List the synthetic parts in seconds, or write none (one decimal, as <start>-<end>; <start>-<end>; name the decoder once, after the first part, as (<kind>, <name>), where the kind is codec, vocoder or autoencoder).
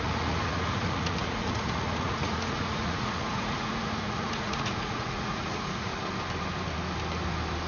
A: 0.0-5.9 (vocoder, Vocos)